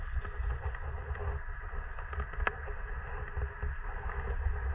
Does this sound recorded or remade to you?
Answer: recorded